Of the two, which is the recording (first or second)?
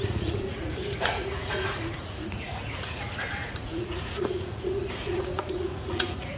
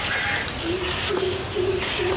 second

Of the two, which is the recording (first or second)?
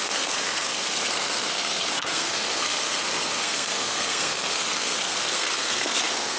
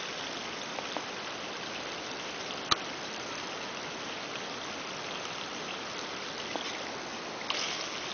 second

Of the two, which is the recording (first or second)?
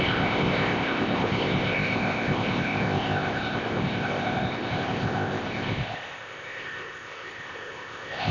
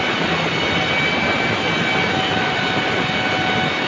second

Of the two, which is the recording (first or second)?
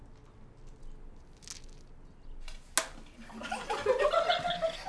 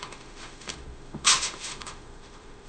first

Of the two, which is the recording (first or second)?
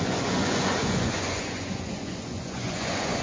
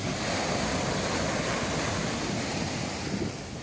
second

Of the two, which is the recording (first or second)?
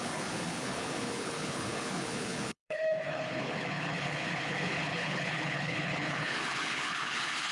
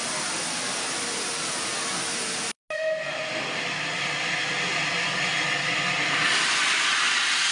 second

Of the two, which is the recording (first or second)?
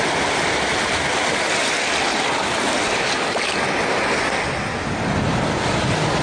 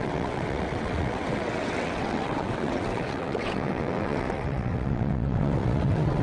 first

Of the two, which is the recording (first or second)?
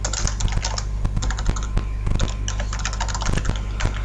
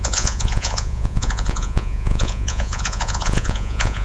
first